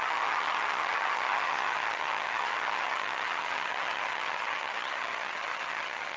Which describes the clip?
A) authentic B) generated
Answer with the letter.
B